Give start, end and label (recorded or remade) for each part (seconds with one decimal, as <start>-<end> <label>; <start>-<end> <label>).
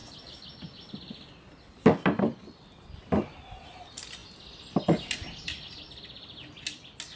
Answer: 0.0-7.2 recorded